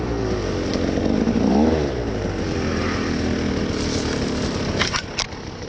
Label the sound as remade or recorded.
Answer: recorded